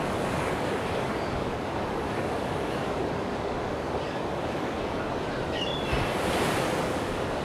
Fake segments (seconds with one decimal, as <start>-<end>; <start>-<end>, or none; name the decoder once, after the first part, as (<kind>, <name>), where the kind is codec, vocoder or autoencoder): 0.0-5.7 (codec, DAC); 6.8-7.4